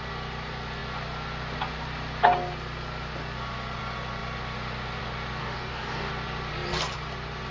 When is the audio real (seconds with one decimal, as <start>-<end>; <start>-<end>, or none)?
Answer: 0.0-5.4; 6.1-7.5